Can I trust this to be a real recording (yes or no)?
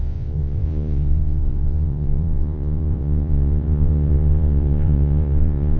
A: no